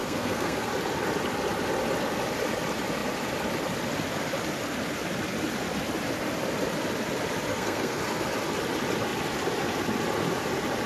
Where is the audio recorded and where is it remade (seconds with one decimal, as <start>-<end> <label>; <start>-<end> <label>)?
0.0-0.7 remade; 0.7-7.5 recorded; 7.5-8.0 remade; 8.0-10.9 recorded